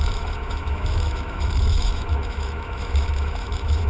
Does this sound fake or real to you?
fake